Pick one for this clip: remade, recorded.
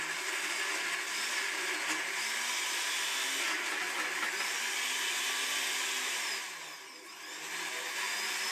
recorded